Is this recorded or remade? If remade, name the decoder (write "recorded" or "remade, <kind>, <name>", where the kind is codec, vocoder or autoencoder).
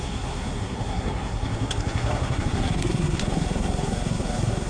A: remade, codec, SNAC